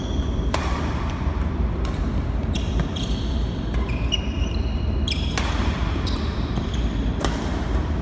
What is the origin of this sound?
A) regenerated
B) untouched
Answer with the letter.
A